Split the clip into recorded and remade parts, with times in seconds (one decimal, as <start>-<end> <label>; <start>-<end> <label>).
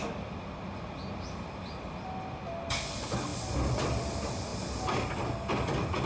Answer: 0.0-6.1 recorded